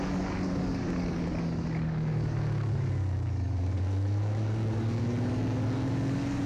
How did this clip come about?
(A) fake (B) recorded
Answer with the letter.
A